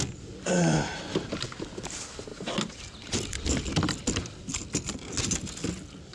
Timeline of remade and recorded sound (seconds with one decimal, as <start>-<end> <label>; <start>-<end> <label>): 0.0-6.1 recorded